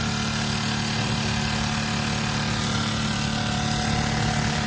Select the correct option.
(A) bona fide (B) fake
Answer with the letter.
A